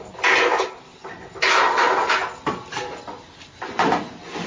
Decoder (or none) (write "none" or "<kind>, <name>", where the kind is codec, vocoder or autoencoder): none